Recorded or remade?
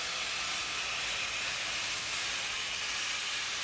recorded